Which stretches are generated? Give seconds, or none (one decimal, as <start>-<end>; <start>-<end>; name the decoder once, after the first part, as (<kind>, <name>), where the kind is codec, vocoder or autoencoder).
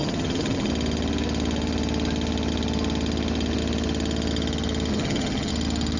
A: 0.0-0.7 (vocoder, HiFi-GAN); 4.9-5.5